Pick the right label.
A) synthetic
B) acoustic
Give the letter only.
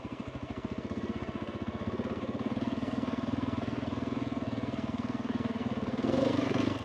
A